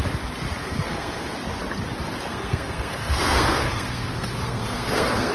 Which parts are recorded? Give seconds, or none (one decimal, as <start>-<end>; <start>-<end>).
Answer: 0.0-0.6; 1.2-2.3